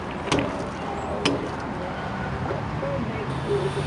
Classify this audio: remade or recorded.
recorded